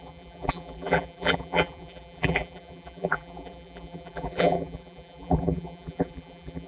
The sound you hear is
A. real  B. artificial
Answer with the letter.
B